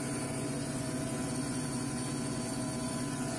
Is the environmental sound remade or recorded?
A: remade